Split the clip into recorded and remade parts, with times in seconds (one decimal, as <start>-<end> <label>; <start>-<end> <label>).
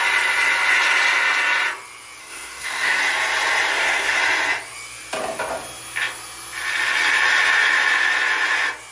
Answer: 0.0-2.2 recorded; 2.2-3.0 remade; 3.0-3.7 recorded; 3.7-4.2 remade; 4.2-8.9 recorded